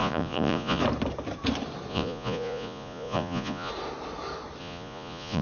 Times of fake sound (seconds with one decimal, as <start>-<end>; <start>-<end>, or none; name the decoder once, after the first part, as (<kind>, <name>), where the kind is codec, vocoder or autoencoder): 0.0-0.8 (vocoder, Vocos); 1.9-3.7; 4.6-5.4